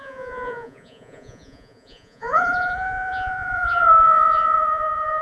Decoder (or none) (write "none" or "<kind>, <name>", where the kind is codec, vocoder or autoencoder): vocoder, Vocos